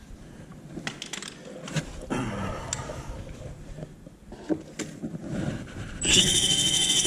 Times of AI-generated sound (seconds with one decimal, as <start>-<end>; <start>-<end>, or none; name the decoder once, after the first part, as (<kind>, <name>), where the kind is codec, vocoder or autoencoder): 6.1-7.1 (codec, SNAC)